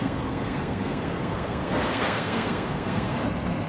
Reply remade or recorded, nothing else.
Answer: remade